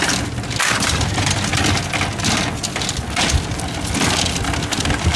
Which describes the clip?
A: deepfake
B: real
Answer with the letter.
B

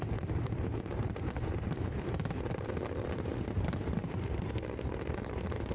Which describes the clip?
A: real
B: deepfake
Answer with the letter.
B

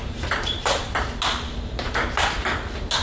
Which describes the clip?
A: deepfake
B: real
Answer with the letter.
B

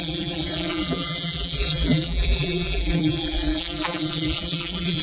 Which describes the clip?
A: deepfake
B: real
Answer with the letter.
A